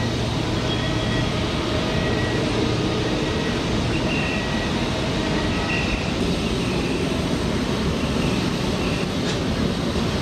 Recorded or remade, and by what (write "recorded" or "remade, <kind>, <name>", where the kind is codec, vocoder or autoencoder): recorded